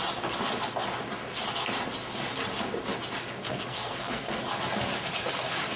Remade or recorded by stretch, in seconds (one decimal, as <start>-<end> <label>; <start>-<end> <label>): 0.0-3.4 recorded; 3.4-4.4 remade; 4.4-5.8 recorded